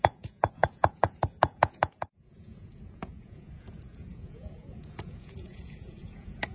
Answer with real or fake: fake